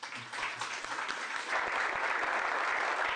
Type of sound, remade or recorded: recorded